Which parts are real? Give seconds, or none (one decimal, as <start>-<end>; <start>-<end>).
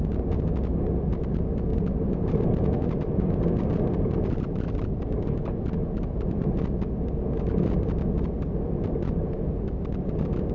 0.0-1.7; 2.4-10.5